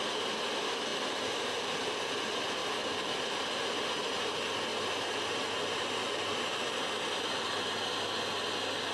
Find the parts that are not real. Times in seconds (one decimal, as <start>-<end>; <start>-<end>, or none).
2.6-3.4; 4.7-7.2